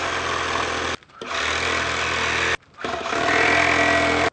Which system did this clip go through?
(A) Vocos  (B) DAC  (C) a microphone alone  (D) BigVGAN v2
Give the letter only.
C